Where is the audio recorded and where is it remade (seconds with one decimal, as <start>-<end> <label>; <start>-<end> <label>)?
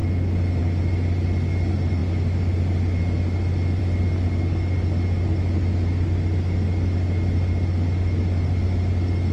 0.0-9.3 recorded